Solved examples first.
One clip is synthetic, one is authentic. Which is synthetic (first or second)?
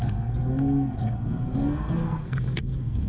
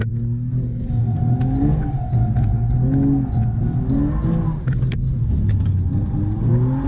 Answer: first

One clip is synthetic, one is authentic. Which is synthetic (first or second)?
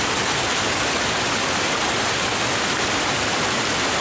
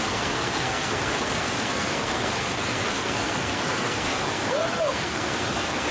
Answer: second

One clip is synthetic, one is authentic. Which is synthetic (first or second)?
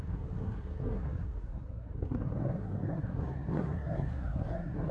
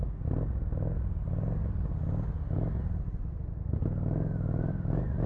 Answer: first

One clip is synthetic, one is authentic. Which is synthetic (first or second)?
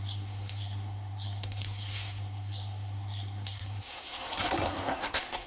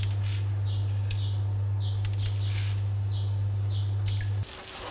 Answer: first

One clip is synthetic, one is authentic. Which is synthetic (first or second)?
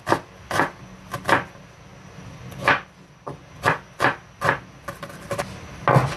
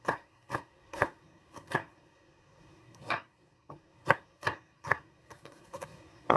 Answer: second